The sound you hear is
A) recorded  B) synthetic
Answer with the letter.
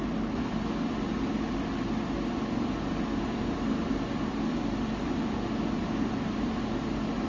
A